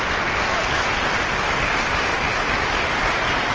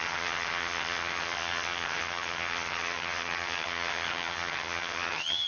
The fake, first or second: second